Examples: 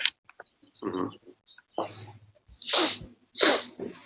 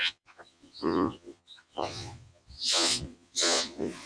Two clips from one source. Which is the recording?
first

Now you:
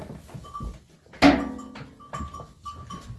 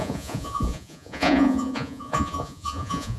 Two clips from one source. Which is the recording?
first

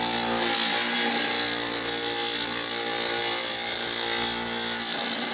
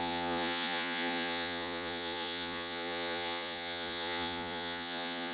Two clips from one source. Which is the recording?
first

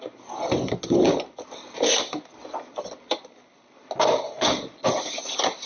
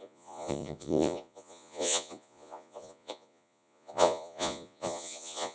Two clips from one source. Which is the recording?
first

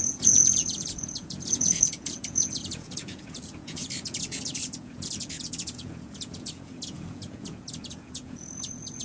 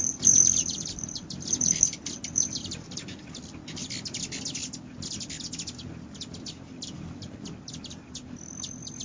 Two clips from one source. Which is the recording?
second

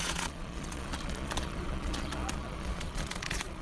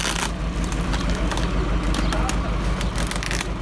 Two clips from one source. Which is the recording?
second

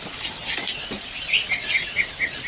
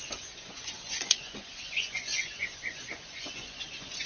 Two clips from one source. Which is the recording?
first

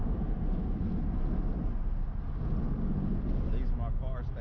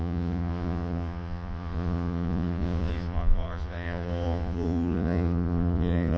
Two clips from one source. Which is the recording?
first